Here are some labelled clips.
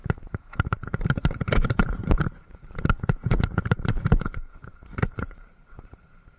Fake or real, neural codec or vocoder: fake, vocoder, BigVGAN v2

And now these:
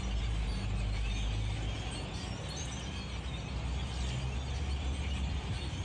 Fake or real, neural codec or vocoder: real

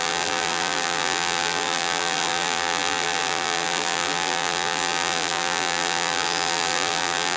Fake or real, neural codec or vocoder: fake, vocoder, BigVGAN v2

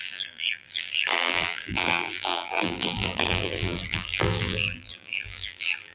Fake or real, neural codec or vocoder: fake, vocoder, BigVGAN v2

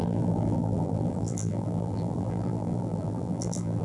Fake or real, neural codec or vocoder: fake, vocoder, BigVGAN v2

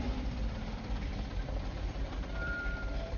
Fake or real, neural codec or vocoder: fake, vocoder, BigVGAN v2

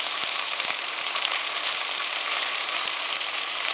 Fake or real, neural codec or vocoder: fake, vocoder, BigVGAN v2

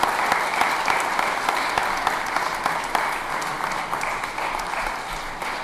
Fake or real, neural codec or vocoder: real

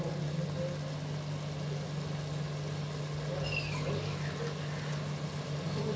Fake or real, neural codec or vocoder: real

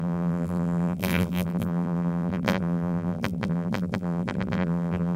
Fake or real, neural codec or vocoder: fake, vocoder, BigVGAN v2